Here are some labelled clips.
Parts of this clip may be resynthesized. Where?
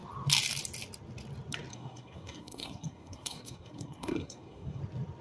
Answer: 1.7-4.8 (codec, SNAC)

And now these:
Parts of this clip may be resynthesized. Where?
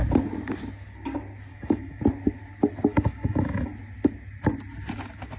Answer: 1.5-2.0 (autoencoder, DAC-VAE); 2.9-3.7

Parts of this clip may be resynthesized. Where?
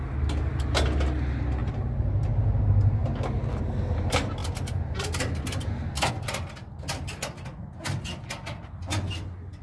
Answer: 1.6-2.3 (vocoder, BigVGAN v2)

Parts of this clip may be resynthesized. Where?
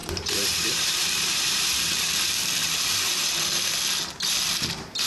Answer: 0.0-2.1 (vocoder, BigVGAN v2); 2.6-3.3